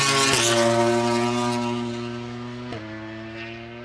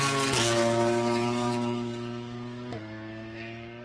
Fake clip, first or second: second